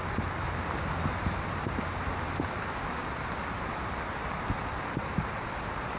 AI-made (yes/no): no